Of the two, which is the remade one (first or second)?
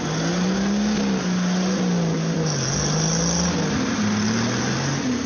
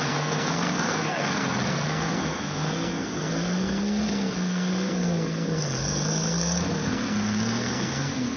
second